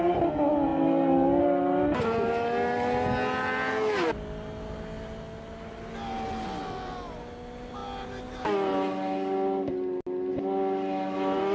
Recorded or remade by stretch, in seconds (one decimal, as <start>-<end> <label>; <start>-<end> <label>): 0.0-11.5 recorded

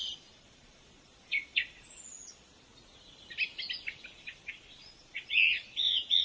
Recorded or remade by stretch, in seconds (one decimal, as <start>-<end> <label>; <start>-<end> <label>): 0.0-2.7 remade; 2.7-4.2 recorded; 4.2-6.2 remade

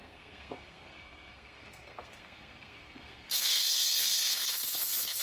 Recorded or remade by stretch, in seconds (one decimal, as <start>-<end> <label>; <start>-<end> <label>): 0.0-5.2 remade

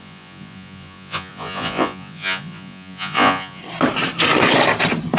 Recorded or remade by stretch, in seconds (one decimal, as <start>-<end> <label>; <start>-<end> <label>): 0.0-3.6 remade; 3.6-5.2 recorded